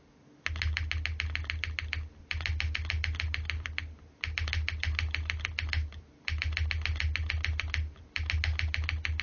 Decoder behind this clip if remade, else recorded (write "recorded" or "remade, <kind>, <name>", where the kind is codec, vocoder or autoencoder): recorded